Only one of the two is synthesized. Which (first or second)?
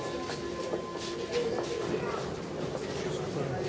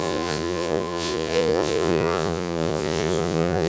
second